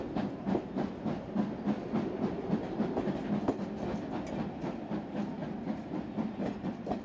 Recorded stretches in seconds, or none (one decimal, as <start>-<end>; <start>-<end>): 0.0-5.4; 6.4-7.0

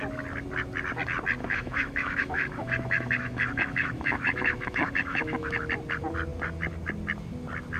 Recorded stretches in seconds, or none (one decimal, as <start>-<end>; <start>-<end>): 0.0-1.4; 5.7-7.8

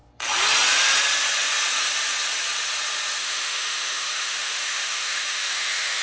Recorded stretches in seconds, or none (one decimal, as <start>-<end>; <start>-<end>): 0.0-3.2

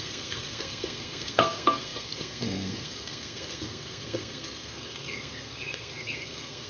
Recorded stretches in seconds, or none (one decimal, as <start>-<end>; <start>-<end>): none